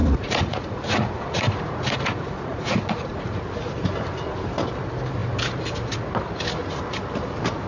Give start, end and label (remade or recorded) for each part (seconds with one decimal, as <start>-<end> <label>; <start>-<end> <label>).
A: 0.0-3.4 remade; 3.4-7.7 recorded